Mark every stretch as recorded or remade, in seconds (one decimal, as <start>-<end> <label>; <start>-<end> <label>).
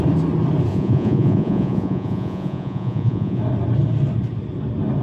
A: 0.0-0.7 recorded; 0.7-3.4 remade; 3.4-5.0 recorded